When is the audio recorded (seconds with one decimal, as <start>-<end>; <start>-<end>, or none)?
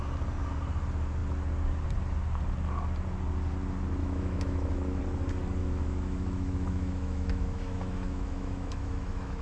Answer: 0.0-4.0; 5.0-5.6